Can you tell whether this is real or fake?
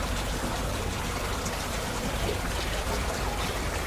real